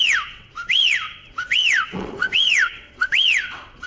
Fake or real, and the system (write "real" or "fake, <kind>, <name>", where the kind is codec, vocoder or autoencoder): fake, vocoder, WaveNeXt